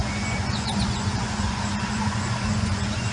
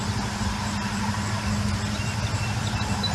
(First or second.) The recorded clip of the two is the second